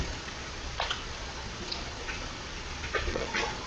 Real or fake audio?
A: fake